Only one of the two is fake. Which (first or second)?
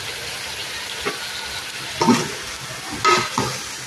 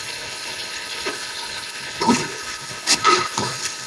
second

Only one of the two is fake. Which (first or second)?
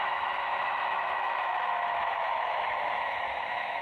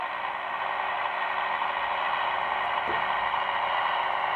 first